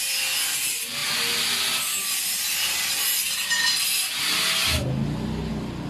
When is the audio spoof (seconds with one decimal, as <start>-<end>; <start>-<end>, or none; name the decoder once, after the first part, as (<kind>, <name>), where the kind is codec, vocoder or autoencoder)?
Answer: 1.0-4.0 (vocoder, BigVGAN v2); 4.6-5.5